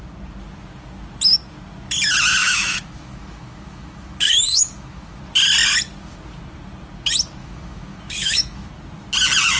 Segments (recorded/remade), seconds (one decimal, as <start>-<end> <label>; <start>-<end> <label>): 0.0-2.4 recorded; 2.4-5.2 remade; 5.2-7.4 recorded; 7.4-8.7 remade; 8.7-9.6 recorded

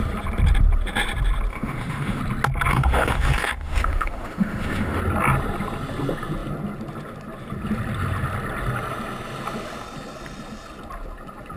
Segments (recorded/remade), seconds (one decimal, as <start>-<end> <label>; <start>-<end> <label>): 0.0-1.5 recorded; 1.5-2.2 remade; 2.2-2.7 recorded; 2.7-5.0 remade; 5.0-11.6 recorded

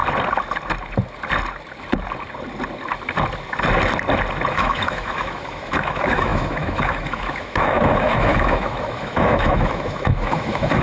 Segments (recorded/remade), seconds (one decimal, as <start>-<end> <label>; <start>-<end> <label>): 0.0-4.5 recorded; 4.5-10.8 remade

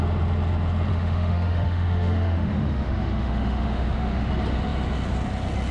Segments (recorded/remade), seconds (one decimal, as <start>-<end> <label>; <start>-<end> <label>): 0.0-0.9 recorded; 0.9-4.3 remade; 4.3-5.7 recorded